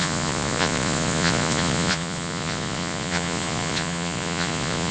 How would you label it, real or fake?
fake